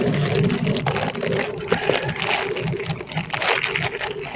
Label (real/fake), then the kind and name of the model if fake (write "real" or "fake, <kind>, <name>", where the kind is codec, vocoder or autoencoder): real